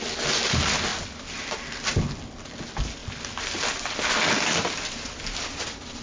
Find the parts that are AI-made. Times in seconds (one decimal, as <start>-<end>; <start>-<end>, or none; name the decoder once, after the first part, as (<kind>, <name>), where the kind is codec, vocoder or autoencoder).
0.9-1.6 (vocoder, BigVGAN v2); 3.0-6.0